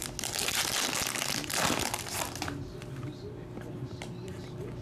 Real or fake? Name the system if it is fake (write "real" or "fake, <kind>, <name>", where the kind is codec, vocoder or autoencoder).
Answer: real